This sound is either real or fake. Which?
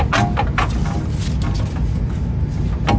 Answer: real